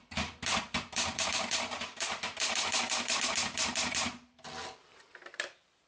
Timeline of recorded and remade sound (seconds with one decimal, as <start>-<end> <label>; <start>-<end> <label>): 0.0-5.9 remade